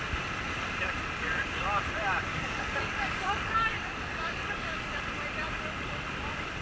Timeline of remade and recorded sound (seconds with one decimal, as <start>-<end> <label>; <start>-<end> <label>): 0.0-2.3 recorded; 2.3-5.0 remade; 5.0-6.6 recorded